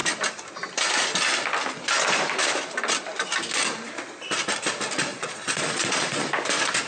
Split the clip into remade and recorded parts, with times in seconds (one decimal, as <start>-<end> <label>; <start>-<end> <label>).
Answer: 0.0-5.1 recorded; 5.1-6.3 remade; 6.3-6.9 recorded

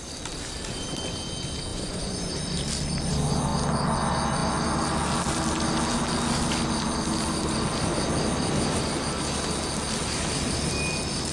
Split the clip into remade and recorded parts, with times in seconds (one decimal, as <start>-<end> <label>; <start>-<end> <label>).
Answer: 0.0-1.7 recorded; 1.7-2.3 remade; 2.3-11.3 recorded

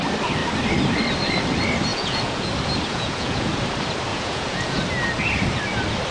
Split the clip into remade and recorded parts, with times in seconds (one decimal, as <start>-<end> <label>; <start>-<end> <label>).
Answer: 0.0-1.9 recorded; 1.9-2.5 remade; 2.5-2.9 recorded; 2.9-3.5 remade; 3.5-4.1 recorded; 4.1-4.8 remade; 4.8-6.1 recorded

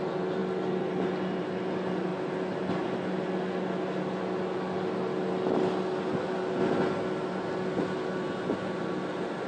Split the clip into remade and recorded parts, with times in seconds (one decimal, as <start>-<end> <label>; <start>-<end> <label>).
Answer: 0.0-9.5 recorded

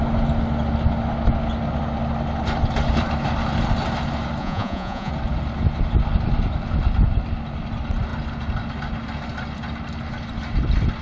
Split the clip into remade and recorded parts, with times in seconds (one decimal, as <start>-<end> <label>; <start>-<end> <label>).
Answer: 0.0-4.4 recorded; 4.4-5.1 remade; 5.1-11.0 recorded

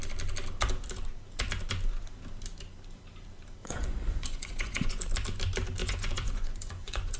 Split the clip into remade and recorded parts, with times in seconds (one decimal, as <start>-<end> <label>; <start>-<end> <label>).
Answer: 0.0-3.6 recorded; 3.6-5.0 remade; 5.0-5.8 recorded; 5.8-7.2 remade